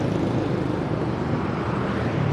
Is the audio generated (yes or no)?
no